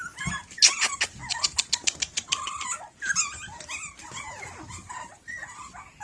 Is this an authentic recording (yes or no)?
yes